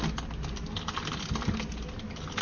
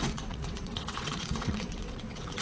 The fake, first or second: second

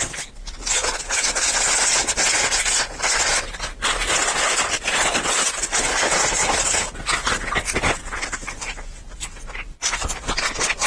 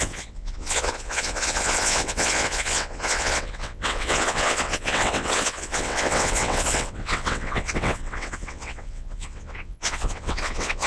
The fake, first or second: second